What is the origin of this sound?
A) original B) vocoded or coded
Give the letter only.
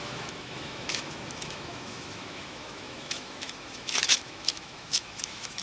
B